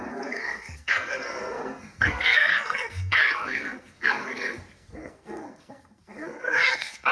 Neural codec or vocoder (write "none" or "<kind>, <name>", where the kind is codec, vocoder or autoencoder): codec, SNAC